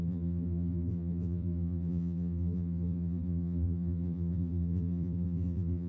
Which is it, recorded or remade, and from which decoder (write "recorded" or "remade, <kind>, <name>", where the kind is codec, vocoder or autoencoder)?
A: remade, vocoder, BigVGAN v2